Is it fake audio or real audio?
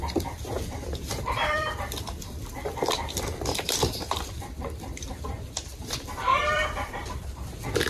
fake